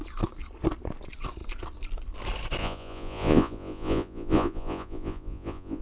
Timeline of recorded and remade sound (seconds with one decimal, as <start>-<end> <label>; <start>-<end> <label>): 0.0-2.6 recorded; 2.6-5.8 remade